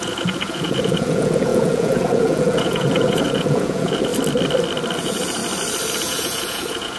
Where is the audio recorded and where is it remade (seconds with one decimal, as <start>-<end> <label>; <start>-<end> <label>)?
0.0-4.1 remade; 4.1-5.0 recorded; 5.0-5.4 remade; 5.4-6.0 recorded; 6.0-7.0 remade